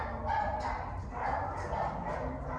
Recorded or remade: recorded